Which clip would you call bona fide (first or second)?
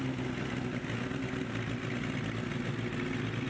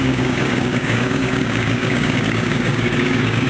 first